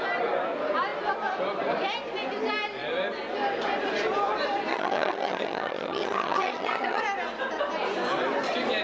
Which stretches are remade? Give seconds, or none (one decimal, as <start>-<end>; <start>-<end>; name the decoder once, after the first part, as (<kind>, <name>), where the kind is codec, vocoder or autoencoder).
4.7-7.0 (vocoder, HiFi-GAN)